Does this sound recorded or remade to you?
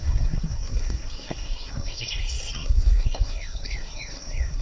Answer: remade